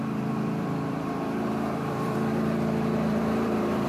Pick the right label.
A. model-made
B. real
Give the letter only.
A